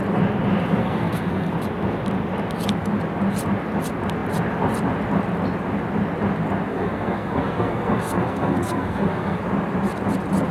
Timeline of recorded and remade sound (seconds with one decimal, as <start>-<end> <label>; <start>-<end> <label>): 0.0-0.8 recorded; 0.8-1.5 remade; 1.5-6.7 recorded; 6.7-9.4 remade; 9.4-10.5 recorded